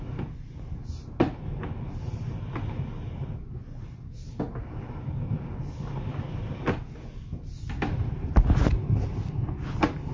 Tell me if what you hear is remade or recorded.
recorded